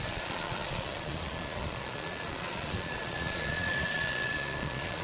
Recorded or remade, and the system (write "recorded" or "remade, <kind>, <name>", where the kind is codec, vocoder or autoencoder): remade, vocoder, Vocos